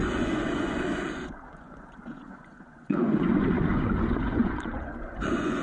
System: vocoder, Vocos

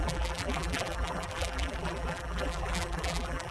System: vocoder, BigVGAN v2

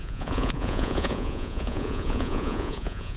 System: vocoder, Vocos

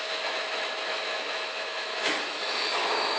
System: autoencoder, DAC-VAE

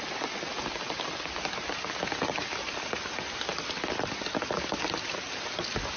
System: none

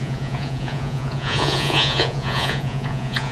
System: vocoder, Vocos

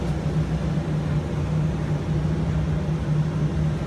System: none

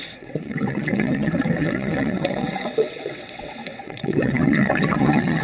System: vocoder, WaveNeXt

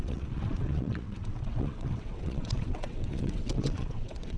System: vocoder, WaveNeXt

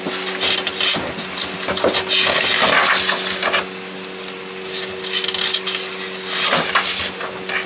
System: none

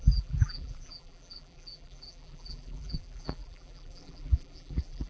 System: vocoder, BigVGAN v2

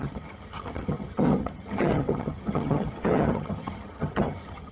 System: vocoder, HiFi-GAN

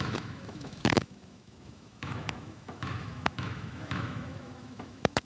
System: autoencoder, DAC-VAE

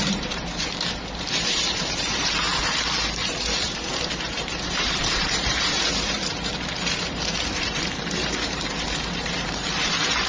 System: vocoder, BigVGAN v2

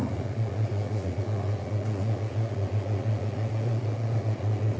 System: vocoder, Vocos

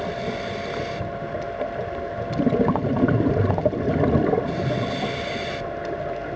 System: none